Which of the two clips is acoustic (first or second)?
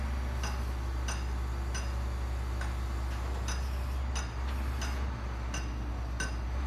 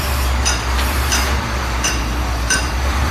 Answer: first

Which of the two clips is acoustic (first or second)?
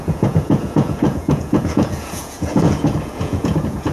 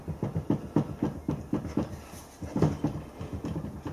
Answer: second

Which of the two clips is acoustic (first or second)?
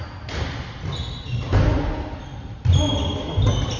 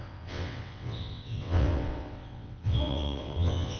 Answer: first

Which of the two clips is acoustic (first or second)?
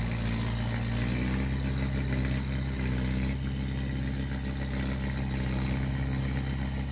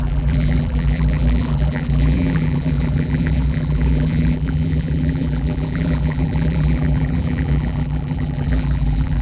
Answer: first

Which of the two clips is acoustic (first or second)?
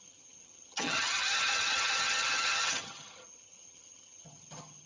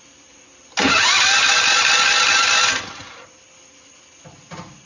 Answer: second